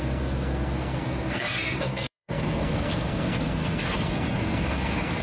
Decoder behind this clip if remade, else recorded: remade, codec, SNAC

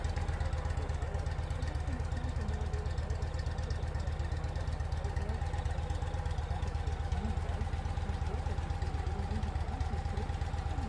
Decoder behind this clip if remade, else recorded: recorded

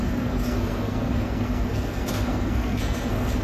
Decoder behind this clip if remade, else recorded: remade, codec, SNAC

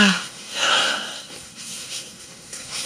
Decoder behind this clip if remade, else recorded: remade, codec, SNAC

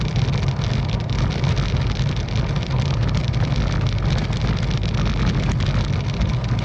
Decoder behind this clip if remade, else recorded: recorded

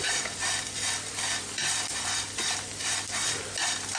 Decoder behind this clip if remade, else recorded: recorded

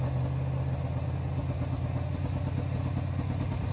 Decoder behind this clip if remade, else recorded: recorded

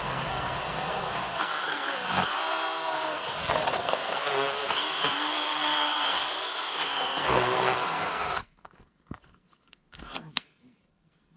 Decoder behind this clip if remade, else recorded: remade, codec, SNAC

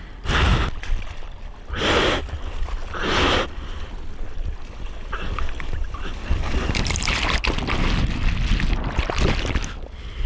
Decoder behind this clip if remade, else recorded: recorded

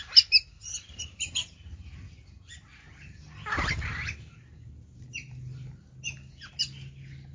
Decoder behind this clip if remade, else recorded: recorded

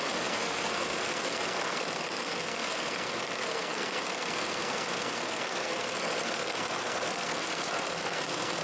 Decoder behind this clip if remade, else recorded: remade, codec, SNAC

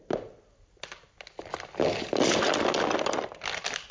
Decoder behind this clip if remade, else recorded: recorded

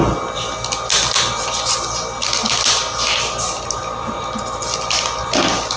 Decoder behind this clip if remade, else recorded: recorded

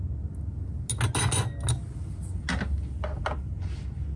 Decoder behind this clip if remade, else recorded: recorded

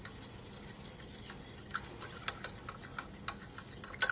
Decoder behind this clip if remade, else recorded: recorded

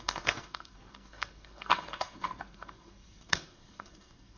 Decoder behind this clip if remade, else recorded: remade, codec, SNAC